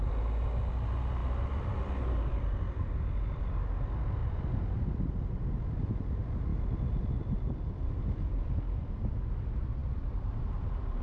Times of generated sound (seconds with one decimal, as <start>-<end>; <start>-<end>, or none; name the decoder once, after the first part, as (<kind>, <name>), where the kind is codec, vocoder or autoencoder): 1.2-3.4 (vocoder, BigVGAN v2); 4.2-4.8; 6.5-8.5; 9.8-10.4